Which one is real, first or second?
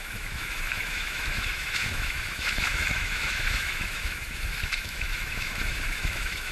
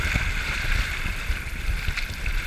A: second